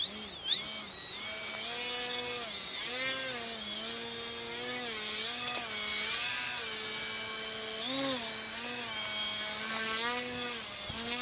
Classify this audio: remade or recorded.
recorded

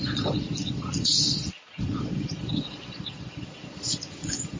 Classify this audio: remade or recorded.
remade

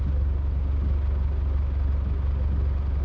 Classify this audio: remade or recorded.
recorded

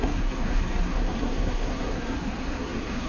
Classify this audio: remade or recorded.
remade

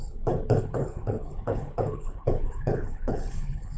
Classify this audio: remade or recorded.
remade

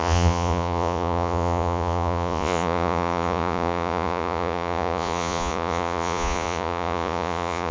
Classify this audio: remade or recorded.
remade